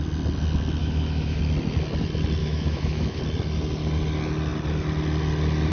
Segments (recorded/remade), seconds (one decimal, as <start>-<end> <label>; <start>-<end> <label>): 0.0-0.8 recorded; 0.8-1.4 remade; 1.4-2.4 recorded; 2.4-3.2 remade; 3.2-5.7 recorded